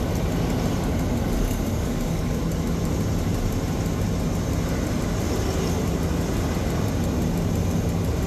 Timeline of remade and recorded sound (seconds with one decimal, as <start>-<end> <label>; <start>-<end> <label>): 0.0-1.7 recorded; 1.7-2.4 remade; 2.4-8.3 recorded